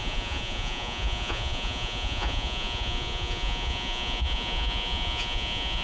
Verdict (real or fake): fake